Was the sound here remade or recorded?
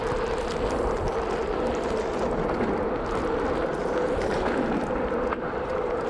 recorded